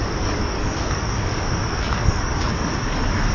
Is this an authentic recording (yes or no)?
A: no